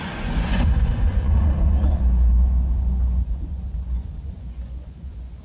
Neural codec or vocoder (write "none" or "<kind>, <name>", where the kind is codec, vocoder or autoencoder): vocoder, Vocos